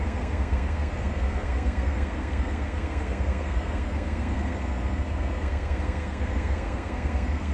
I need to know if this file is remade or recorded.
remade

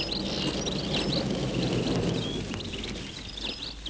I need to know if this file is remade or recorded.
recorded